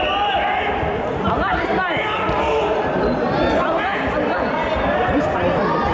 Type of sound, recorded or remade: recorded